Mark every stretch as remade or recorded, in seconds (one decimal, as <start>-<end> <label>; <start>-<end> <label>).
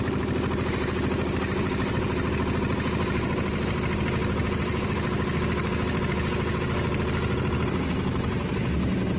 0.0-9.2 recorded